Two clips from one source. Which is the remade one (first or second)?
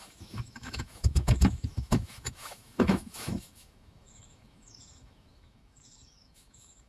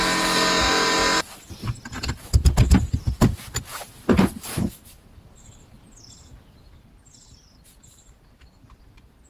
first